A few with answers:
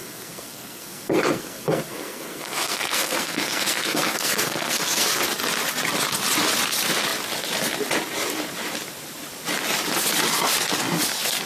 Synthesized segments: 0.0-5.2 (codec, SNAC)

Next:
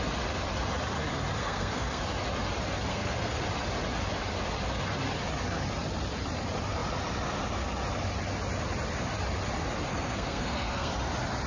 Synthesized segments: 1.4-2.0 (codec, SNAC); 2.9-3.4; 9.9-10.9

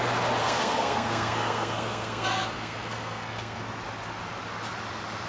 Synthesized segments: 0.4-3.6 (codec, SNAC)